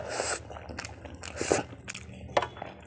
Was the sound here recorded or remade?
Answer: recorded